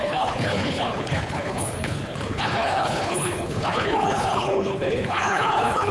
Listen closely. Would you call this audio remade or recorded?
remade